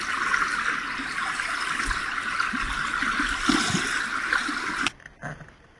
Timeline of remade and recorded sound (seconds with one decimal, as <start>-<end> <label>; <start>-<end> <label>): 0.0-5.8 recorded